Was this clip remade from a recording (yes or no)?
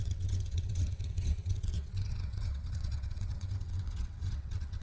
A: yes